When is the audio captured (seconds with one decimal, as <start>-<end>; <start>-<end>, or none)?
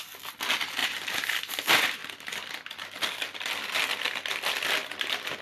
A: 0.0-5.4